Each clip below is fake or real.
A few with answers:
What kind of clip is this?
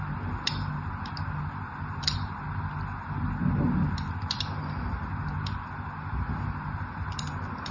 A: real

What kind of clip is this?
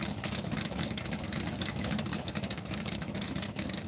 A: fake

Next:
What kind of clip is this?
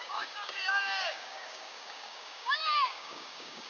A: fake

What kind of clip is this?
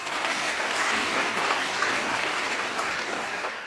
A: fake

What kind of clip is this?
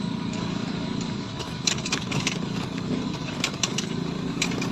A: fake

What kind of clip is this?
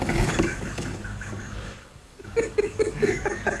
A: fake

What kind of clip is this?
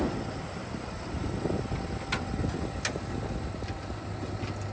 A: real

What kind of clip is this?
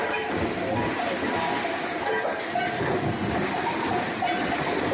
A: real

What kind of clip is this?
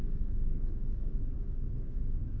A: fake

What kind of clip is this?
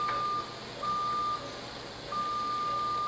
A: real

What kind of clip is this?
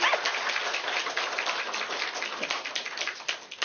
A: real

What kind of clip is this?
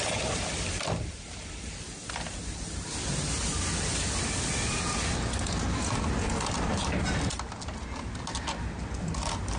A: real